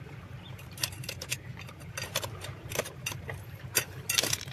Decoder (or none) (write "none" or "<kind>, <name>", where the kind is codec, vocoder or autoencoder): vocoder, BigVGAN v2